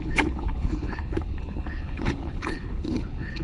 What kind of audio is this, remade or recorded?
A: remade